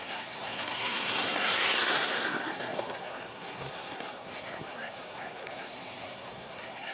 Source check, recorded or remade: remade